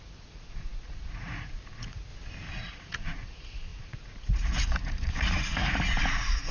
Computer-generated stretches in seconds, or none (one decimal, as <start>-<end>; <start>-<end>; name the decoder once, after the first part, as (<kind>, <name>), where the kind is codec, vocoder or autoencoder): 0.0-2.1 (vocoder, Vocos); 2.6-6.5